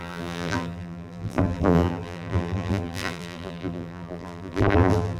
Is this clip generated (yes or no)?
yes